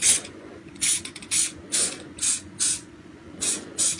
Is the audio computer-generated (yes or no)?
yes